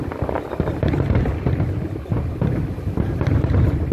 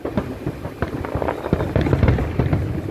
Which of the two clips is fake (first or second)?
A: first